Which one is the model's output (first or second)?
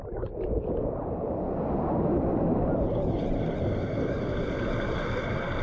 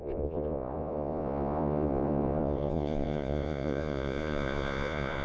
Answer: second